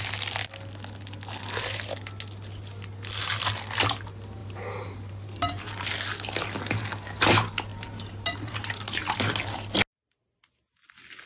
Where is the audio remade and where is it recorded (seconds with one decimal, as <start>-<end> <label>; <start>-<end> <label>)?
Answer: 0.0-4.4 recorded; 4.4-5.9 remade; 5.9-7.7 recorded; 7.7-9.1 remade; 9.1-11.3 recorded